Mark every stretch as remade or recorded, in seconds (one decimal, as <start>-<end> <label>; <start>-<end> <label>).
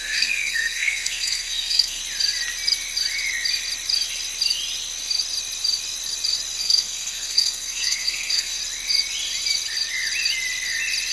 0.0-2.0 remade; 2.0-6.6 recorded; 6.6-8.6 remade; 8.6-11.1 recorded